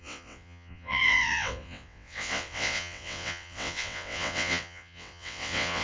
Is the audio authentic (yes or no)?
no